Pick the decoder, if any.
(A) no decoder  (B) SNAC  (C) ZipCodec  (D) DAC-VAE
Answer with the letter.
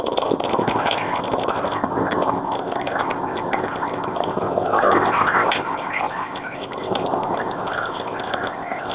C